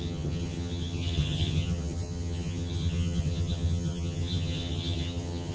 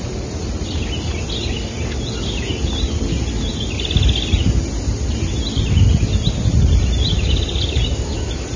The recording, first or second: second